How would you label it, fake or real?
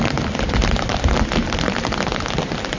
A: real